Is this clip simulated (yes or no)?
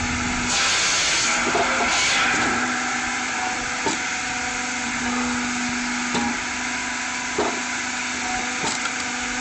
no